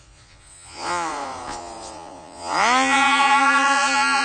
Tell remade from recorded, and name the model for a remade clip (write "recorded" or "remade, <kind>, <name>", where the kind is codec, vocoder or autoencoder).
remade, vocoder, Vocos